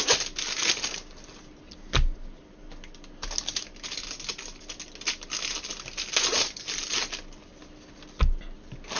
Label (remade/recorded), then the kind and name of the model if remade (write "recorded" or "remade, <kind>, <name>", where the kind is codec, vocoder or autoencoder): recorded